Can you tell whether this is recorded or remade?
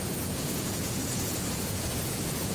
remade